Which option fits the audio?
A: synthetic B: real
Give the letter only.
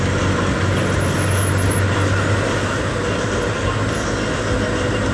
B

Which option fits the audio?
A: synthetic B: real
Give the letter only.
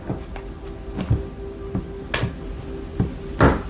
B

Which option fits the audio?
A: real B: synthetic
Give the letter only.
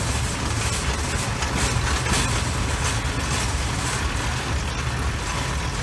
A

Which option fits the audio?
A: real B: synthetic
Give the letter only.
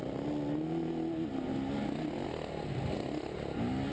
A